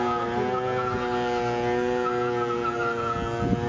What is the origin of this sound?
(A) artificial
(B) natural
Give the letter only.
B